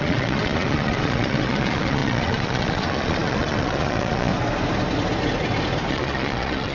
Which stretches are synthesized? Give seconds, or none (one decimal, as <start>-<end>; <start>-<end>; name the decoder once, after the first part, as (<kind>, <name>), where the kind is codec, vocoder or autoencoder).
0.0-4.3 (vocoder, Vocos); 5.9-6.7